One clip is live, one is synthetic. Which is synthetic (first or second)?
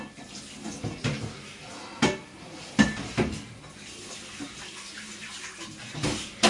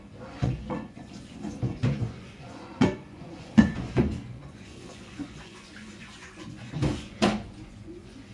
second